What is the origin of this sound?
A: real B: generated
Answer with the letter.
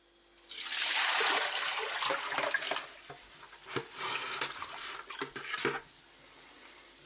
A